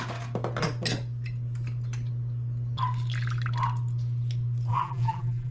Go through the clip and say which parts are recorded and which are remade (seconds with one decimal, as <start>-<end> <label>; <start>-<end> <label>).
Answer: 0.0-4.7 recorded; 4.7-5.5 remade